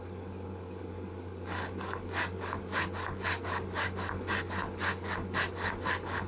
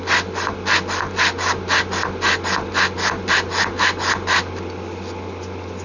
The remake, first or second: first